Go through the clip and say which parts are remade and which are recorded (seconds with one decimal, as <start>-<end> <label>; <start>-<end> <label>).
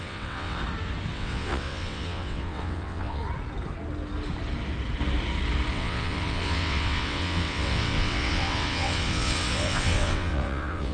0.0-0.6 remade; 0.6-1.1 recorded; 1.1-3.2 remade; 3.2-5.7 recorded; 5.7-10.9 remade